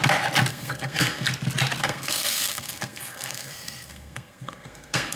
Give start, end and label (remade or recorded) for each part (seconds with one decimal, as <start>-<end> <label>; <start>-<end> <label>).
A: 0.0-0.5 recorded; 0.5-1.3 remade; 1.3-1.8 recorded; 1.8-5.2 remade